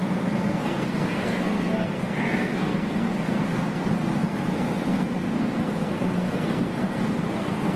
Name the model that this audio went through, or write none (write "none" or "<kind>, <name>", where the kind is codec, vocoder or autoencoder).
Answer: codec, SNAC